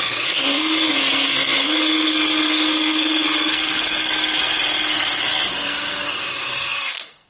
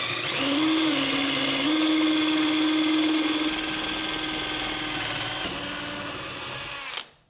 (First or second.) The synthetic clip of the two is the first